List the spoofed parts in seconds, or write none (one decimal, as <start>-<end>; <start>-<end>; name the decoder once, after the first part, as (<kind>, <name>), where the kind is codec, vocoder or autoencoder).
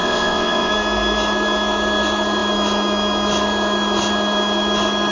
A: 0.0-0.7 (vocoder, WaveNeXt)